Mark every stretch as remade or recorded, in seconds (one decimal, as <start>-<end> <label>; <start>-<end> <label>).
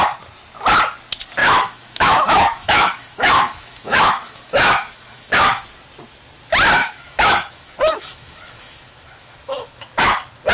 0.0-1.4 recorded; 1.4-5.7 remade; 5.7-6.8 recorded; 6.8-9.8 remade; 9.8-10.5 recorded